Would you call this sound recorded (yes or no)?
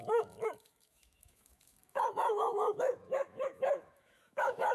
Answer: no